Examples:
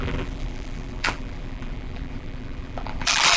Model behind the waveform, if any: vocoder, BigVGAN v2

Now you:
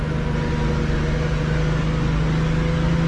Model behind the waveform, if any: none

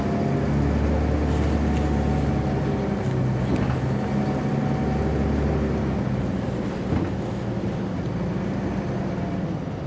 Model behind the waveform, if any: none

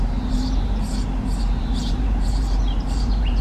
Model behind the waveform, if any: vocoder, BigVGAN v2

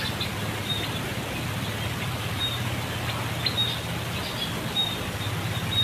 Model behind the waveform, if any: none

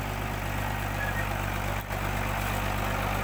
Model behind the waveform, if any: none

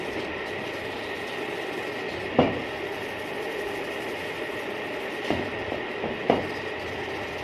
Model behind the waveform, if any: none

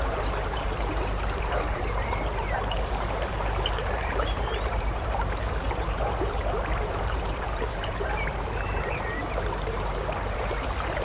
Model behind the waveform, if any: vocoder, BigVGAN v2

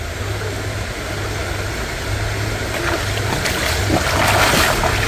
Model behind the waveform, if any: none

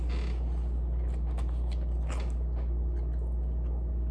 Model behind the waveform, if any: none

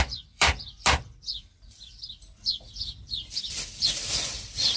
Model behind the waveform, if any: vocoder, BigVGAN v2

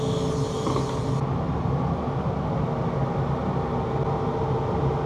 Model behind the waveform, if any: none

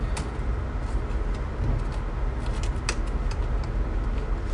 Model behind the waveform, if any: none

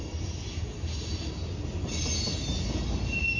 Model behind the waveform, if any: none